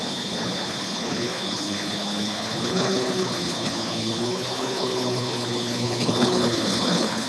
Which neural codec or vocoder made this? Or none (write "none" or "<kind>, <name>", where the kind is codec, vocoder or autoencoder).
codec, HILCodec